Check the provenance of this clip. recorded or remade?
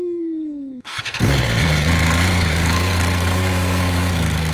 remade